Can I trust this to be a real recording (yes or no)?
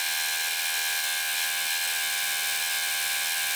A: yes